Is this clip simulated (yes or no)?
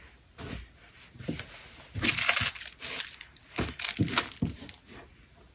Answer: no